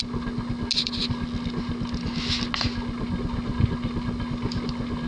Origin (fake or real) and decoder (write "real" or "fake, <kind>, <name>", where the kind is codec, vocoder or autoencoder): real